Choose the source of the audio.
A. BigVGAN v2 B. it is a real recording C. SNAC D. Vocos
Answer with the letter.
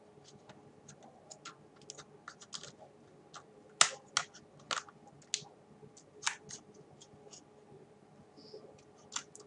B